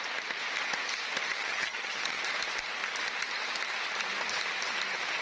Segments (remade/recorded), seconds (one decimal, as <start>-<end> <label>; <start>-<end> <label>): 0.0-1.3 recorded; 1.3-2.2 remade; 2.2-5.2 recorded